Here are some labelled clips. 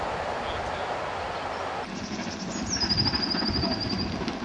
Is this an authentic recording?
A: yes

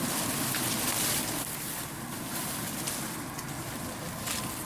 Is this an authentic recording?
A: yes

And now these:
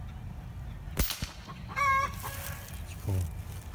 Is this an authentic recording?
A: yes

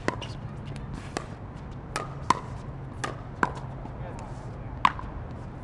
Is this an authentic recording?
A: yes